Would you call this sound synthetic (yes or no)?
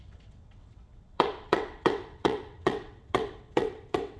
yes